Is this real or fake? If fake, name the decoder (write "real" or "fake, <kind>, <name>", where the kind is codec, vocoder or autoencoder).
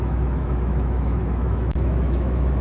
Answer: fake, autoencoder, DAC-VAE